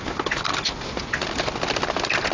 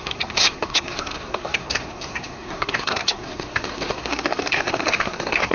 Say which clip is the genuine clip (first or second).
first